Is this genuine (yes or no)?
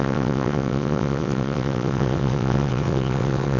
no